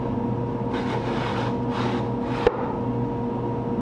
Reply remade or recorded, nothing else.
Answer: recorded